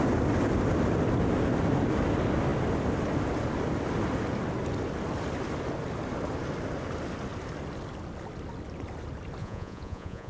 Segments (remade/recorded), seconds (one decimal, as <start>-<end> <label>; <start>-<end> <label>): 0.0-9.4 recorded; 9.4-10.3 remade